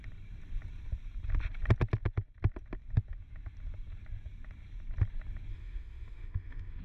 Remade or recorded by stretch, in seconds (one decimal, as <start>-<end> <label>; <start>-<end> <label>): 0.0-5.5 recorded; 5.5-6.8 remade